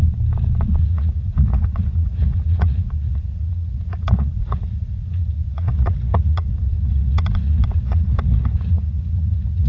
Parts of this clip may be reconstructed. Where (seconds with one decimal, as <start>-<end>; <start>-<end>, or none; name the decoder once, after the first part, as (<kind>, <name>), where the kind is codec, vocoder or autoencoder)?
0.8-9.7 (vocoder, Vocos)